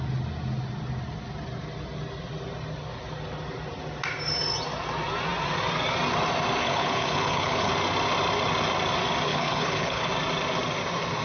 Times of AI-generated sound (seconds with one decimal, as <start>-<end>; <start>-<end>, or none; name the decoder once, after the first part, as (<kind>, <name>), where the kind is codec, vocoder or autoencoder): 6.6-7.7 (codec, HILCodec); 9.3-10.1